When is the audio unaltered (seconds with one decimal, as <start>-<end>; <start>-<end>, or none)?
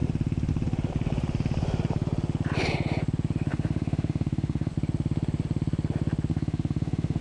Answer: 0.0-3.5; 4.7-6.3